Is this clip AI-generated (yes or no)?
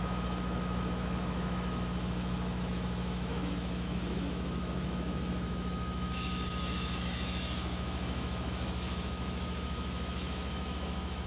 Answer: yes